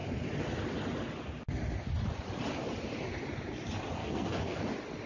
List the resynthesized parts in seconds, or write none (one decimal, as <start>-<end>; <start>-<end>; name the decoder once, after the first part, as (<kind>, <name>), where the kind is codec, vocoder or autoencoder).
4.0-4.6 (codec, SNAC)